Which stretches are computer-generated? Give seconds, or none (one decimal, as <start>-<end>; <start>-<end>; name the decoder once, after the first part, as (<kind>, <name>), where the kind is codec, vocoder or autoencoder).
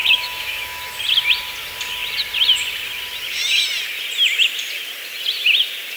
0.0-1.0 (autoencoder, DAC-VAE)